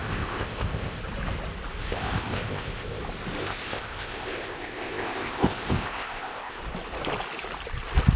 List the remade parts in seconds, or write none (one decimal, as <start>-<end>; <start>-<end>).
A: 0.0-1.0; 1.8-3.0; 3.4-6.6